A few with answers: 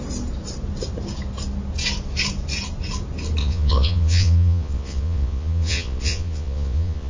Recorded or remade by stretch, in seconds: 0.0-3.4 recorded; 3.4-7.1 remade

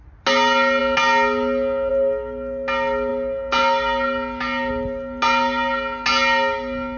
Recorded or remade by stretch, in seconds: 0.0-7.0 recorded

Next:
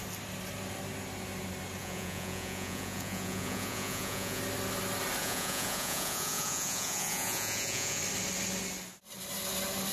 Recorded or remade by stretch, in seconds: 0.0-1.8 recorded; 1.8-4.4 remade; 4.4-5.2 recorded; 5.2-8.0 remade; 8.0-9.9 recorded

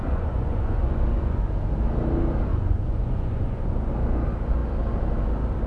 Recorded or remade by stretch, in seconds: 0.0-1.4 remade; 1.4-2.5 recorded; 2.5-3.9 remade; 3.9-5.7 recorded

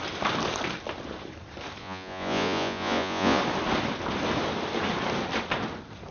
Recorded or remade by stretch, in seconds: 0.0-1.8 recorded; 1.8-3.4 remade; 3.4-6.1 recorded

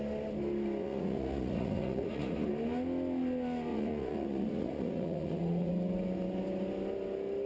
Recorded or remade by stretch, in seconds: 0.0-0.8 recorded; 0.8-2.5 remade; 2.5-3.7 recorded; 3.7-5.7 remade; 5.7-7.5 recorded